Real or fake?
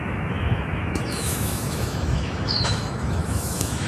fake